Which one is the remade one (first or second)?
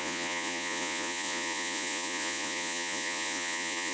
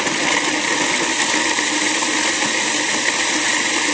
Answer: first